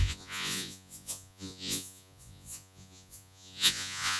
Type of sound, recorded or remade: remade